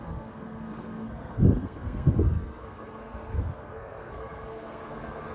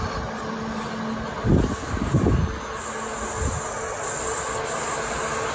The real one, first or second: second